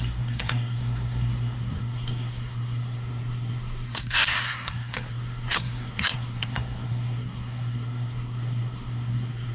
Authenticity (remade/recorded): remade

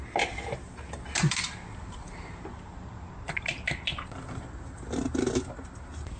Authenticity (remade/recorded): recorded